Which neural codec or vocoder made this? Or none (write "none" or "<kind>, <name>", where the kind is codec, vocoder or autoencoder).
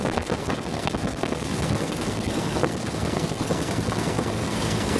codec, SNAC